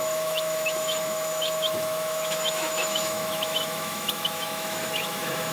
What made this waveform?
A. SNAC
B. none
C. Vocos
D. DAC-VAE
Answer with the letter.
D